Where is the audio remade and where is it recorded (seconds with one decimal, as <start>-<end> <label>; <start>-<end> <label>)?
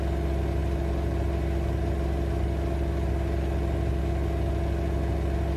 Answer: 0.0-5.6 recorded